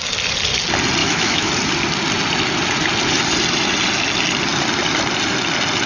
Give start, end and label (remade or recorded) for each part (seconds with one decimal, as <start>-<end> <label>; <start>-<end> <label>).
0.0-1.0 recorded; 1.0-1.5 remade; 1.5-5.9 recorded